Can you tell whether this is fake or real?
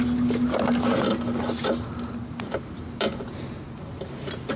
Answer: real